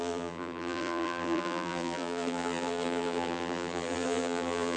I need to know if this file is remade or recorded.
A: remade